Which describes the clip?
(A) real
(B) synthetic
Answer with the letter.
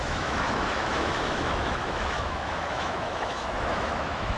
B